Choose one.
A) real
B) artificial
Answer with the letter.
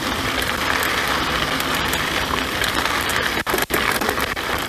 B